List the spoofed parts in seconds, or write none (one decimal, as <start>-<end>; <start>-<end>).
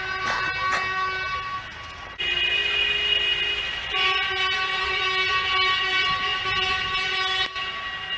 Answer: none